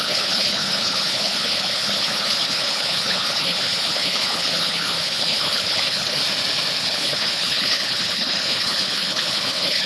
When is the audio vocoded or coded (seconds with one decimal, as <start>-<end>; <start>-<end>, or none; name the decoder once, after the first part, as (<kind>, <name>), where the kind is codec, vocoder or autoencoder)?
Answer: 0.0-6.2 (codec, HILCodec); 6.8-9.9